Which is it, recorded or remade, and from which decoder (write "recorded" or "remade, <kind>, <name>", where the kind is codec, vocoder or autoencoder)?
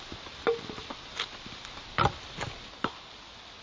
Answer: recorded